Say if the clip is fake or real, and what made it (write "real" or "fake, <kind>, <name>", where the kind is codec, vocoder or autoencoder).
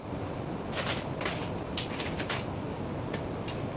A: real